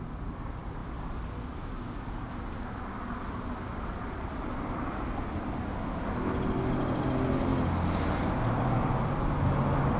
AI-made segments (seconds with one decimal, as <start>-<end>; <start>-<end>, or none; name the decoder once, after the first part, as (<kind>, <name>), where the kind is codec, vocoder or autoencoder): none